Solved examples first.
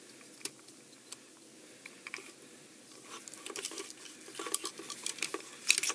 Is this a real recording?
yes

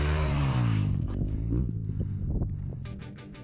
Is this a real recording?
no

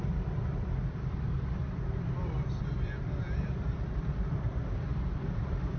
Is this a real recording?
no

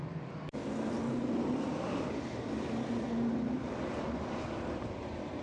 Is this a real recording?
no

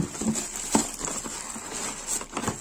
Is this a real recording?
yes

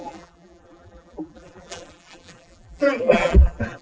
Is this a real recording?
no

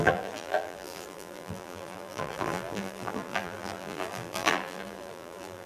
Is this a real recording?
no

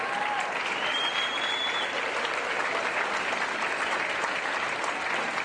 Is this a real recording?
no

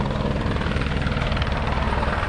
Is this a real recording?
no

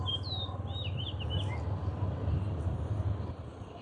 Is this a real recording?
yes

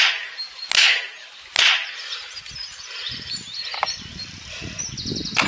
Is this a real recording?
yes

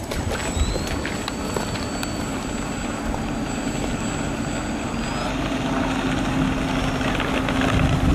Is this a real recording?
yes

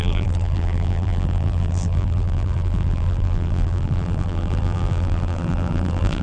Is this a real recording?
no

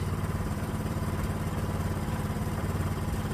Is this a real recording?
no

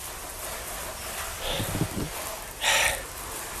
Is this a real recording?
yes